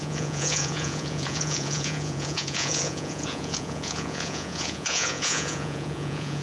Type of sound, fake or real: fake